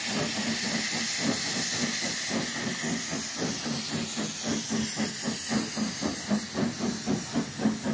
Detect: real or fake real